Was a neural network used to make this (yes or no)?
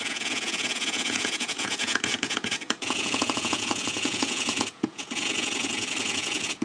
yes